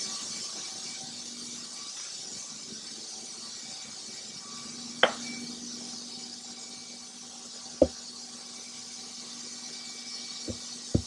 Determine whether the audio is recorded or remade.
recorded